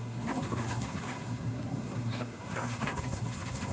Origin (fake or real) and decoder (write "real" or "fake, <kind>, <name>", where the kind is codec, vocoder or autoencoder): fake, codec, SNAC